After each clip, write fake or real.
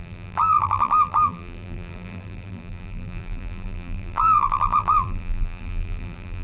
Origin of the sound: fake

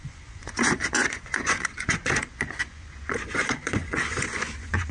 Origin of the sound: fake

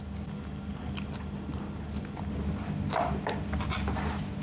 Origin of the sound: real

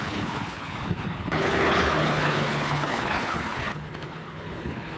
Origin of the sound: fake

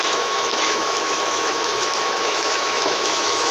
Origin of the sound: fake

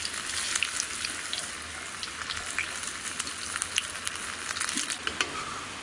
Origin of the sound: real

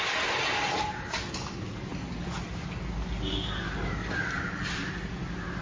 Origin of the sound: real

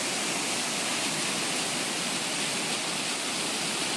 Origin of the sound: real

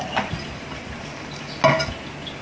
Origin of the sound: real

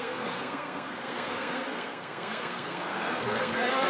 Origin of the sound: fake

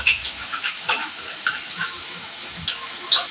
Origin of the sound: fake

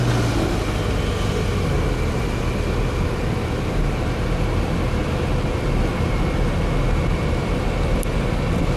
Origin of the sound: real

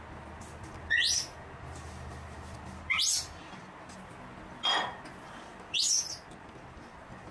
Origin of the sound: real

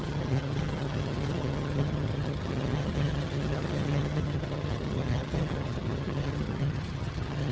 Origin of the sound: fake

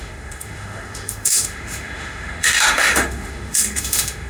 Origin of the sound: fake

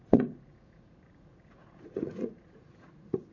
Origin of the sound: fake